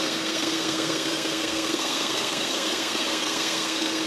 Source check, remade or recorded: remade